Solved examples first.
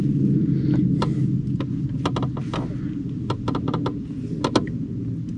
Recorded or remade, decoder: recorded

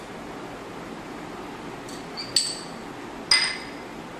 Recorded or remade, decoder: recorded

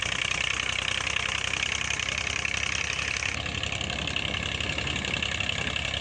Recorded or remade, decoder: recorded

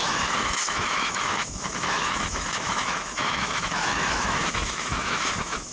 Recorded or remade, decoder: remade, autoencoder, DAC-VAE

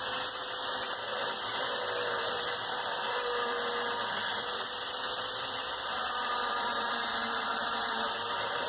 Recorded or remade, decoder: remade, vocoder, BigVGAN v2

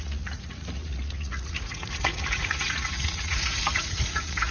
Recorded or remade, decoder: remade, vocoder, Vocos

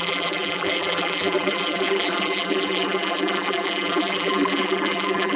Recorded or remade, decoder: remade, vocoder, BigVGAN v2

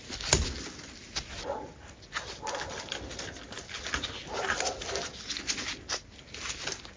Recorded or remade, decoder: recorded